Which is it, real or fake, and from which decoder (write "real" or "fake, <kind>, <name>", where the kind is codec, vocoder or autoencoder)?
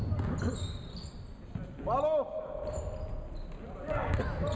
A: real